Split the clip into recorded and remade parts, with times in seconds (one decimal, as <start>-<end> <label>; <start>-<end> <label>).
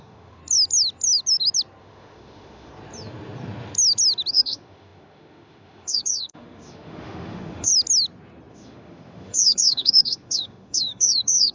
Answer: 0.0-0.4 remade; 0.4-1.8 recorded; 1.8-2.7 remade; 2.7-4.3 recorded; 4.3-7.7 remade; 7.7-8.5 recorded; 8.5-11.5 remade